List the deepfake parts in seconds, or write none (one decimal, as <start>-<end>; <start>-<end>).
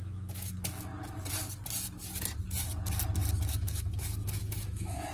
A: 0.0-0.9; 3.5-5.1